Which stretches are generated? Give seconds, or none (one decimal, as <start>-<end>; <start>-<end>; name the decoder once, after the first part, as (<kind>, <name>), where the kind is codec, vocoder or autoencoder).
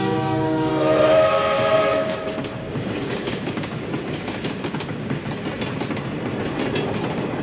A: 0.0-0.7 (codec, DAC); 1.9-5.2